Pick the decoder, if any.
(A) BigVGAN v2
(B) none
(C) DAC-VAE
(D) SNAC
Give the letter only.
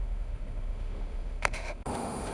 C